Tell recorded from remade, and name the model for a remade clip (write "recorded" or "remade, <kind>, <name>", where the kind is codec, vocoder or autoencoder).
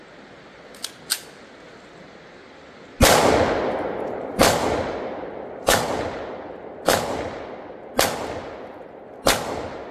recorded